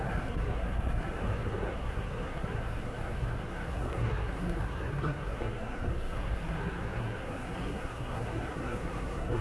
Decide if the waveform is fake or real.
fake